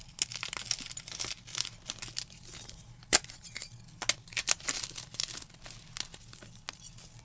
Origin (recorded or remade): recorded